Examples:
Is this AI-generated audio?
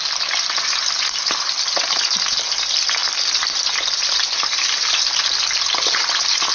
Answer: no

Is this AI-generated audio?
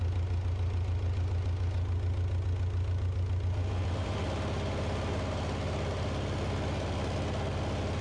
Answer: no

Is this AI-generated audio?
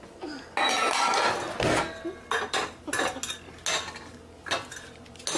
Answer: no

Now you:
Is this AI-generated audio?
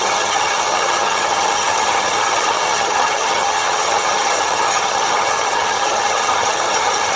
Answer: yes